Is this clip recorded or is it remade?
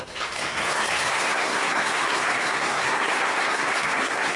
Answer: remade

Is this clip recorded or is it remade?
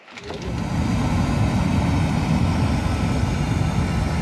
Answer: recorded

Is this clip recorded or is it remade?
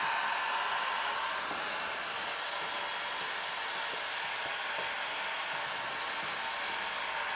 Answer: recorded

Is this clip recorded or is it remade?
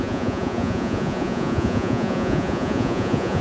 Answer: remade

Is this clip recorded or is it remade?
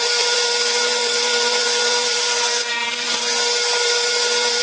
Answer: remade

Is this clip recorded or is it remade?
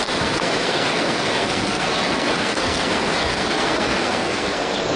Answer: remade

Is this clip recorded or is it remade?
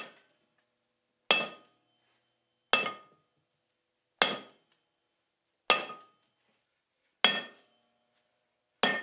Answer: recorded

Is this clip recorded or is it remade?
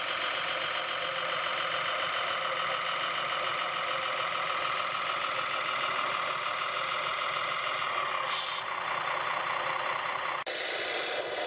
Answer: recorded